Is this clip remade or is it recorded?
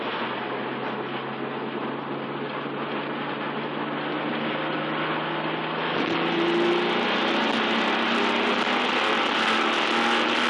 recorded